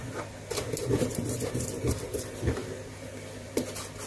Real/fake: real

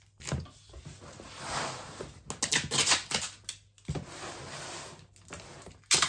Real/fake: real